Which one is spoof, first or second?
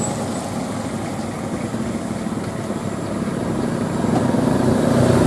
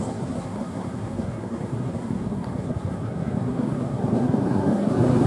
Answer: second